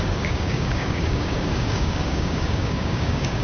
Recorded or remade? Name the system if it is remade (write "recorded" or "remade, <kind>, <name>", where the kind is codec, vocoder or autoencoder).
remade, codec, DAC